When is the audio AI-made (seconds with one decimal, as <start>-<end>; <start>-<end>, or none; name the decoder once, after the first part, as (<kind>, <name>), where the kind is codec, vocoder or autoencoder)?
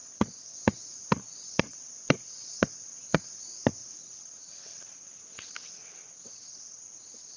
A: 0.0-3.4 (vocoder, WaveNeXt); 3.8-6.8